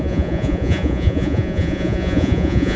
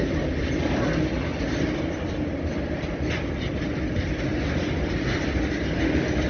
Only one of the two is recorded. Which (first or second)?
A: second